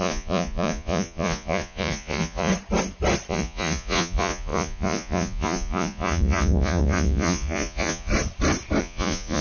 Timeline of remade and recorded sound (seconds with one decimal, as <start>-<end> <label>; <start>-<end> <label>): 0.0-2.5 remade; 2.5-3.3 recorded; 3.3-8.1 remade; 8.1-8.8 recorded; 8.8-9.4 remade